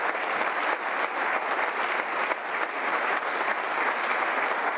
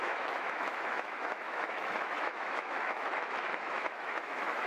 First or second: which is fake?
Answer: second